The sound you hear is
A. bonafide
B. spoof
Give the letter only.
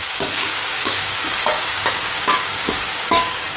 B